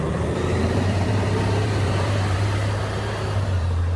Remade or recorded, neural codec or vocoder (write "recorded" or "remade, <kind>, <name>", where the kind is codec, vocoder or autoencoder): remade, vocoder, BigVGAN v2